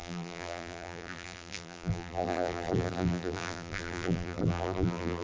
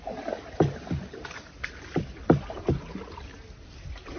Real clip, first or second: second